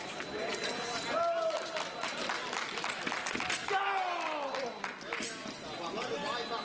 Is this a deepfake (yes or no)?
no